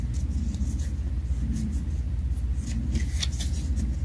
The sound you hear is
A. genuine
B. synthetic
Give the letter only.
A